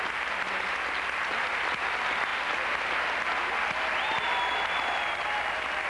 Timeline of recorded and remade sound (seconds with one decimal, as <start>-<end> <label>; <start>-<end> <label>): 0.0-5.9 recorded